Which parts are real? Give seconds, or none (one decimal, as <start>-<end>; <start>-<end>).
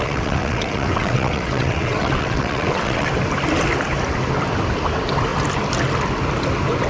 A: 3.1-6.9